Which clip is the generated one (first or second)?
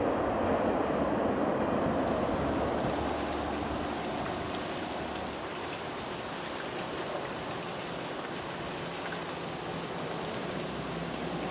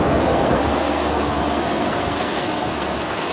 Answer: second